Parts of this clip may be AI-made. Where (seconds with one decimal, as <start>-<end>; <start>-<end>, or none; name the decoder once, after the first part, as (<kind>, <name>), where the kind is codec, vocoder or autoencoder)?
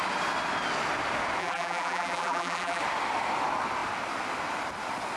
1.4-2.8 (vocoder, BigVGAN v2)